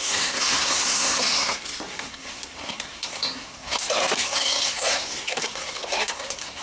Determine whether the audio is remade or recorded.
remade